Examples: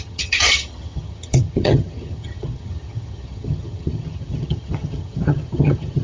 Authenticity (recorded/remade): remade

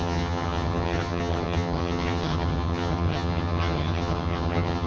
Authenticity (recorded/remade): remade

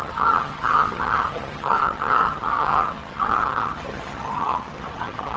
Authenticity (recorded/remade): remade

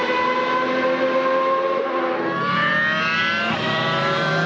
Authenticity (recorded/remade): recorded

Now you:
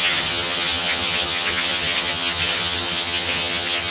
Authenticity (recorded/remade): remade